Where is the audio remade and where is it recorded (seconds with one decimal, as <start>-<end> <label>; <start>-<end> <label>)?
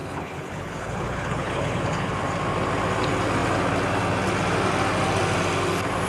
0.0-2.1 remade; 2.1-6.1 recorded